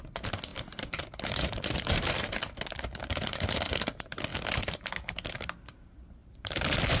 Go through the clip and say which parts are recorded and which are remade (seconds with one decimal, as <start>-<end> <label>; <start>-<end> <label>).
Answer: 0.0-0.5 recorded; 0.5-3.7 remade; 3.7-6.2 recorded; 6.2-7.0 remade